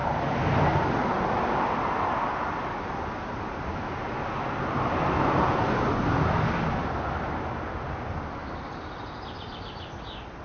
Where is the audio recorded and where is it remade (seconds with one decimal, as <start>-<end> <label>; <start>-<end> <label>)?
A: 0.0-10.4 recorded